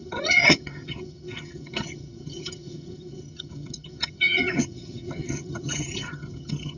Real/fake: fake